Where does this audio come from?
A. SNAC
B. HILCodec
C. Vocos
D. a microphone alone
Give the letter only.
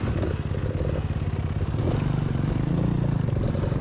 D